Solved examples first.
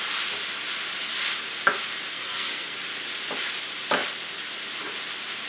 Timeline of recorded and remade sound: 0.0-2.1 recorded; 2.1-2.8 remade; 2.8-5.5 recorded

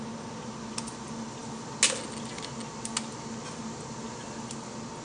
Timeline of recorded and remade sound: 0.0-5.0 recorded

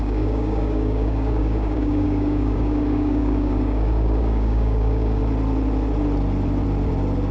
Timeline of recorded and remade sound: 0.0-5.2 remade; 5.2-7.3 recorded

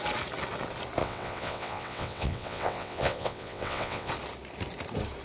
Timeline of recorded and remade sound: 0.0-1.0 recorded; 1.0-4.1 remade; 4.1-5.2 recorded

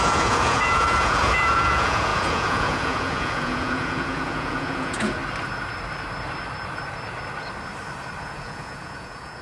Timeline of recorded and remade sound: 0.0-5.2 remade; 5.2-8.2 recorded; 8.2-9.4 remade